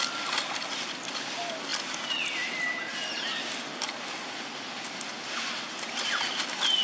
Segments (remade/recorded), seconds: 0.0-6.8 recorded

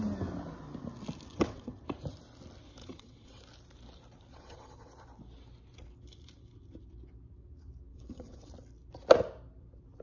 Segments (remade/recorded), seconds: 0.0-1.3 recorded; 1.3-1.8 remade; 1.8-2.8 recorded; 2.8-3.4 remade; 3.4-4.3 recorded; 4.3-4.9 remade; 4.9-7.9 recorded; 7.9-8.5 remade; 8.5-10.0 recorded

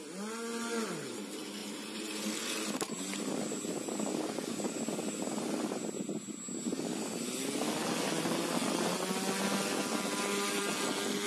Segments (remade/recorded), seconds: 0.0-11.3 recorded

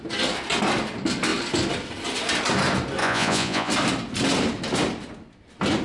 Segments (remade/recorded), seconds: 0.0-3.0 recorded; 3.0-3.7 remade; 3.7-5.8 recorded

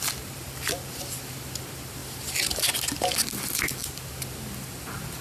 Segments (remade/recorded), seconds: 0.0-5.2 recorded

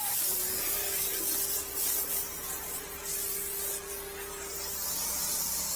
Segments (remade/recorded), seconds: 0.0-5.8 recorded

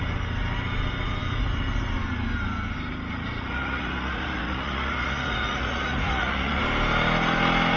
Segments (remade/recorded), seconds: 0.0-3.1 recorded; 3.1-6.6 remade; 6.6-7.8 recorded